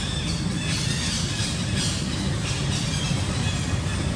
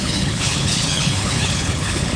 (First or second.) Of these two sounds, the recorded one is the first